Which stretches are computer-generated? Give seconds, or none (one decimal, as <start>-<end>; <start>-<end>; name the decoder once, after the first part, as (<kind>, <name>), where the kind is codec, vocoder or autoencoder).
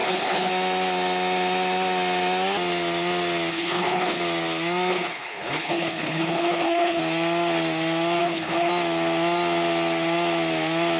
0.0-0.5 (codec, HILCodec); 3.5-4.2; 4.9-7.0; 8.2-8.7